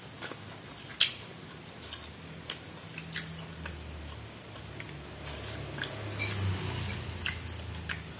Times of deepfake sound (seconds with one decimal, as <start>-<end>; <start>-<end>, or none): none

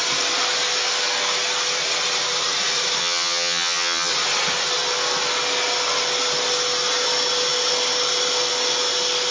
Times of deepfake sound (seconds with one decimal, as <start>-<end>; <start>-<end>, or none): 3.0-4.1

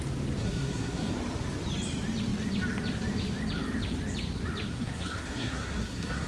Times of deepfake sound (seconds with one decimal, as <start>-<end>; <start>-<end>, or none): 0.4-1.1; 4.7-6.3

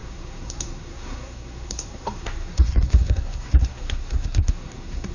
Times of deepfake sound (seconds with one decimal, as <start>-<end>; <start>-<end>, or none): 0.0-5.1

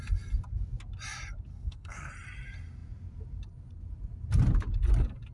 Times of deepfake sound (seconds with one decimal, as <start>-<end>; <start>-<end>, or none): 1.5-2.1

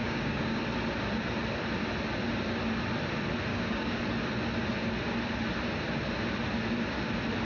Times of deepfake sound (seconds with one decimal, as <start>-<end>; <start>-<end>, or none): 0.0-0.6; 3.5-4.0

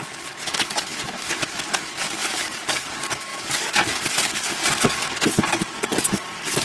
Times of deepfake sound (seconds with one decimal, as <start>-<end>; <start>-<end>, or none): 0.0-6.6